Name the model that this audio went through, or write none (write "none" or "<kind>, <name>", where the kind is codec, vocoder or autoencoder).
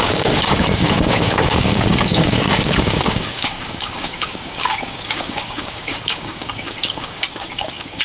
codec, DAC